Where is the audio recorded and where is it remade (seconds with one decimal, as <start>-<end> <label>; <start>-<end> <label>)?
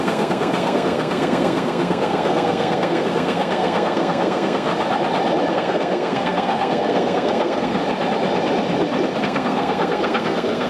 0.0-4.7 remade; 4.7-5.5 recorded; 5.5-7.8 remade; 7.8-9.2 recorded; 9.2-10.7 remade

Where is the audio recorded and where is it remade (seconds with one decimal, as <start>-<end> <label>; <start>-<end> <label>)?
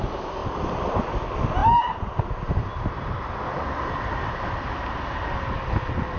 0.0-6.2 recorded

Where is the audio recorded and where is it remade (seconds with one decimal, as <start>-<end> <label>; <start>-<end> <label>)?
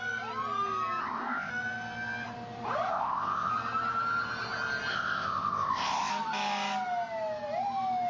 0.0-1.0 recorded; 1.0-1.5 remade; 1.5-2.9 recorded; 2.9-3.5 remade; 3.5-4.9 recorded; 4.9-6.1 remade; 6.1-8.1 recorded